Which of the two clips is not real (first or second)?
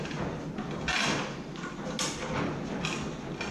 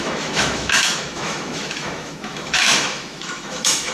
second